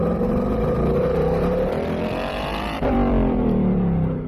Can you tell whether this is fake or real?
fake